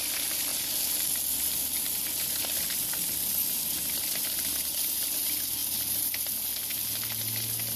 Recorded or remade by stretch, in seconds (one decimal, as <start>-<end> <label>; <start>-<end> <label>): 0.0-7.8 recorded